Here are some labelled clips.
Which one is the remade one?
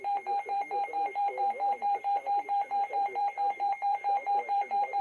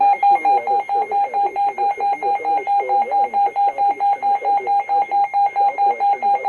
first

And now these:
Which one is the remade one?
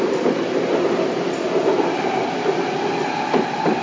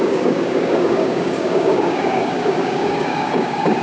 second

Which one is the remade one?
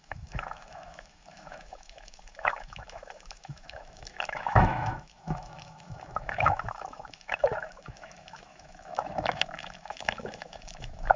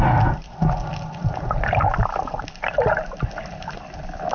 first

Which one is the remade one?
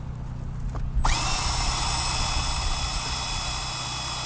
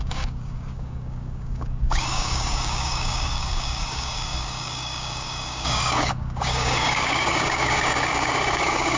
second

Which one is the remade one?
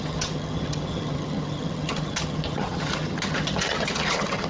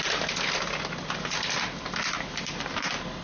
first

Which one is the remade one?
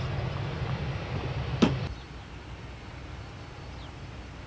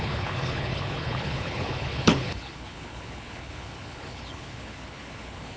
second